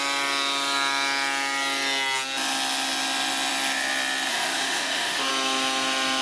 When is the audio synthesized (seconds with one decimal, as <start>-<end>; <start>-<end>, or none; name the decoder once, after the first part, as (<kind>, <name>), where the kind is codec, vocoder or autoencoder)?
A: 4.3-5.3 (autoencoder, DAC-VAE)